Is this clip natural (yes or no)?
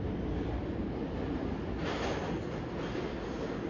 yes